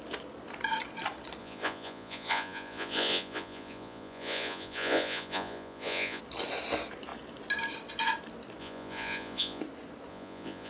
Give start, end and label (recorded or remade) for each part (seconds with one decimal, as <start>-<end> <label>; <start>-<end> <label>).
0.0-1.4 recorded; 1.4-6.2 remade; 6.2-8.6 recorded; 8.6-9.6 remade; 9.6-10.1 recorded; 10.1-10.7 remade